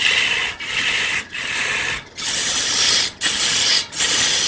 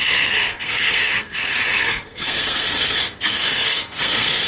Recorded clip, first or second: first